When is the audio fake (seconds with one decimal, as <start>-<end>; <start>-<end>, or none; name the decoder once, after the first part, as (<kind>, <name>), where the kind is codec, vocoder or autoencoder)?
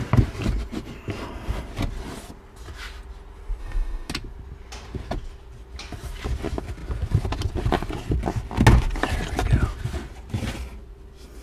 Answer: 3.6-4.1 (autoencoder, DAC-VAE)